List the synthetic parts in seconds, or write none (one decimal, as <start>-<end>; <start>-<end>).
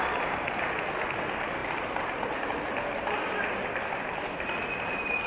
none